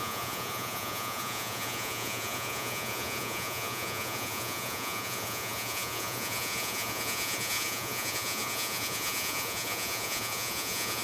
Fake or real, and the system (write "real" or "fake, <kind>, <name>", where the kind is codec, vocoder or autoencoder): fake, vocoder, Vocos